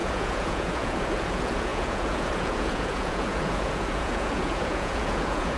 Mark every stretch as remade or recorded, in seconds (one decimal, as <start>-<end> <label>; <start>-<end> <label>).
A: 0.0-5.6 remade